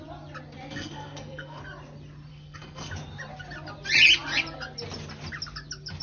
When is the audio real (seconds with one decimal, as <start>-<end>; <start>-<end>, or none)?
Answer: 0.0-0.7; 1.6-2.3; 2.9-6.0